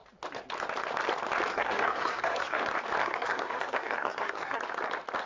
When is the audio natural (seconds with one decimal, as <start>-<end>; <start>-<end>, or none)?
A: 0.0-1.5; 2.6-3.0; 4.6-5.3